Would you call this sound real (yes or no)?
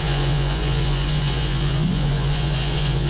no